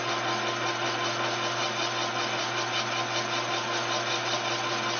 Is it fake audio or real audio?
real